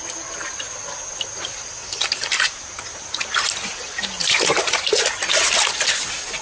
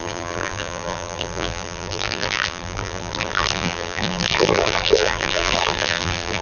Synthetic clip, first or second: second